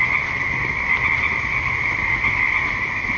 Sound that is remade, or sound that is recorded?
recorded